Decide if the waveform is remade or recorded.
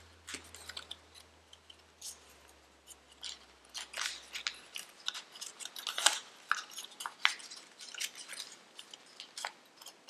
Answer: recorded